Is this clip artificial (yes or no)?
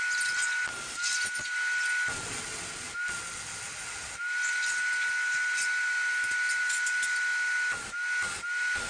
no